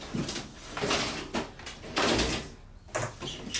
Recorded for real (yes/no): yes